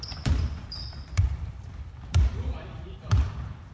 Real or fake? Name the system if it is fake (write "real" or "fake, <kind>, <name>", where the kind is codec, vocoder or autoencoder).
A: fake, vocoder, BigVGAN v2